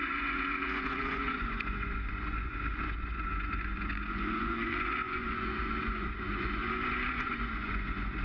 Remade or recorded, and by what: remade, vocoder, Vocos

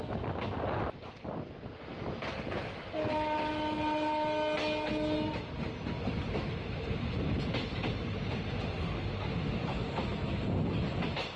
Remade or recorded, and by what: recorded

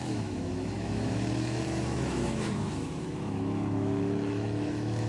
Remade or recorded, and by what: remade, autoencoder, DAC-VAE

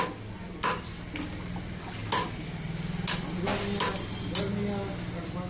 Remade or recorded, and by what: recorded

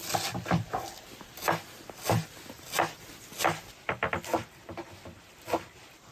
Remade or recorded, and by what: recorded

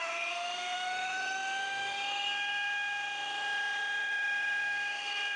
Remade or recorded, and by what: remade, autoencoder, DAC-VAE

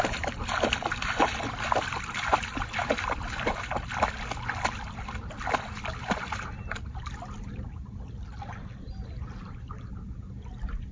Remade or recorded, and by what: recorded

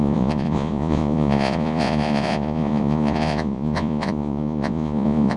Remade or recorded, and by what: remade, vocoder, Vocos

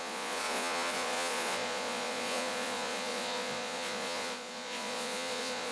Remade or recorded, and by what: remade, vocoder, Vocos